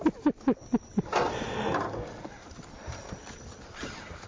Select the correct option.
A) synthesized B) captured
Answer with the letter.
B